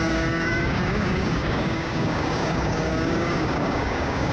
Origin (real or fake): fake